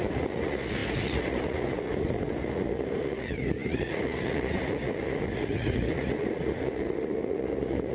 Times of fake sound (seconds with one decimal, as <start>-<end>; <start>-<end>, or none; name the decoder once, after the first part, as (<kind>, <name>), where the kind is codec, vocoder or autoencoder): 0.0-7.9 (vocoder, Vocos)